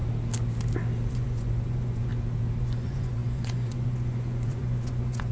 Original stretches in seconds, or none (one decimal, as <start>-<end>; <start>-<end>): 0.0-1.1; 2.1-2.6